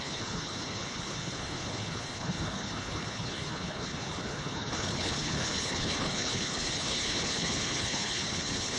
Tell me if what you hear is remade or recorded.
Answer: remade